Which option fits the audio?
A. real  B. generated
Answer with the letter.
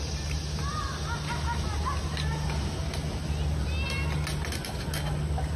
A